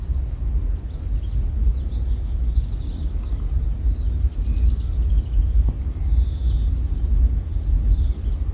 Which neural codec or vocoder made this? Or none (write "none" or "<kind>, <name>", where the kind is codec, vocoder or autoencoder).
none